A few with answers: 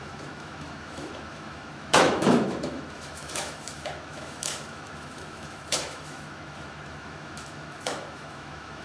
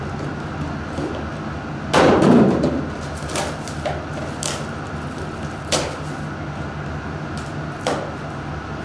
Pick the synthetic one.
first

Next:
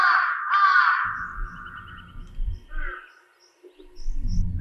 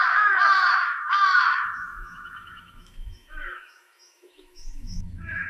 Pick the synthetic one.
second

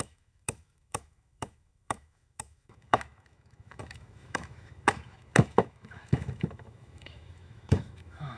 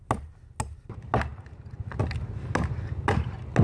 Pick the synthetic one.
first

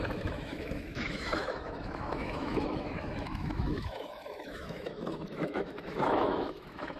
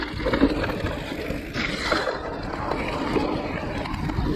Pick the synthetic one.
first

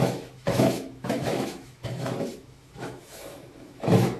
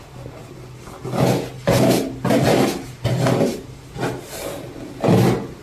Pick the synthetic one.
first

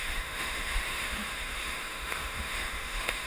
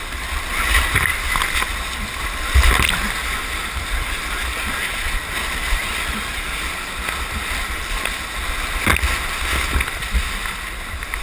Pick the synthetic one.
first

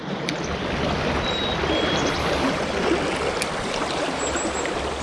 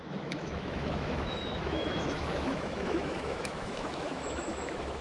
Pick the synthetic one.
second